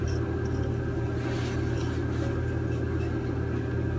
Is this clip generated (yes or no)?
no